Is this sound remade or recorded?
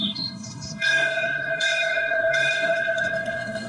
remade